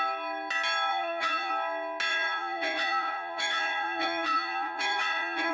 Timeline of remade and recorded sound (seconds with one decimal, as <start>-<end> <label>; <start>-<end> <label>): 0.0-0.9 recorded; 0.9-1.5 remade; 1.5-2.1 recorded; 2.1-5.5 remade